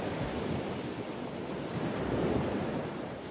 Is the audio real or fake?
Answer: real